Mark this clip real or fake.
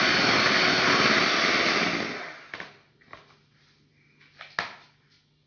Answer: real